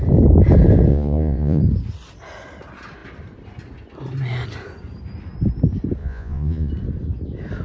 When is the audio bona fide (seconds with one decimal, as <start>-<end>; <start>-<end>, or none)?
0.0-0.9; 1.6-6.0; 6.7-7.6